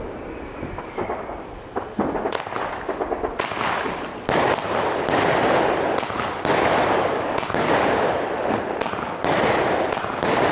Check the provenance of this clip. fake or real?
real